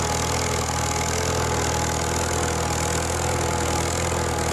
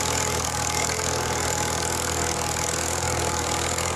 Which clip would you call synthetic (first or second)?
second